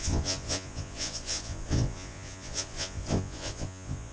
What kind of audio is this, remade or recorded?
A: remade